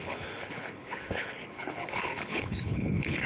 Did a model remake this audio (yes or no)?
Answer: yes